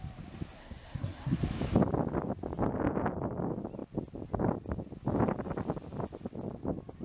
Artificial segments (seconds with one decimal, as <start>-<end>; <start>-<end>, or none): 0.6-1.4